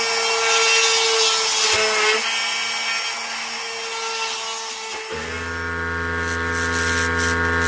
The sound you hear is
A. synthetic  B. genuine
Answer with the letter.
B